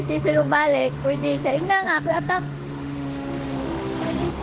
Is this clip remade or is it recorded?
remade